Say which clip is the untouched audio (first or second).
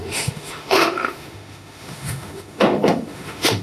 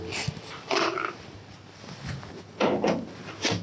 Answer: second